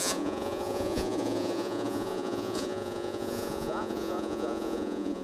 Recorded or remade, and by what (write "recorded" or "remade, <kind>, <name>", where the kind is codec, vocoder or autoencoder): remade, vocoder, Vocos